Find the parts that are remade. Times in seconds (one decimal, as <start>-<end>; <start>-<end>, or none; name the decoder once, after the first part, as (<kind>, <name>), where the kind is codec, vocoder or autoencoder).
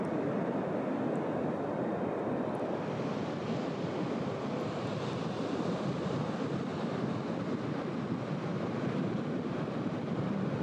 none